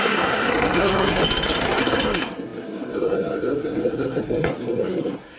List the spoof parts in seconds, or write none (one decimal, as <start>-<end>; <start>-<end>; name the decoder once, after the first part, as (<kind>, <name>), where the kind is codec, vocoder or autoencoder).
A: 0.0-1.2 (codec, SNAC); 1.8-5.4